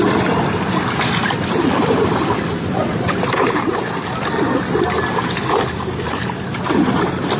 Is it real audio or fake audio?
fake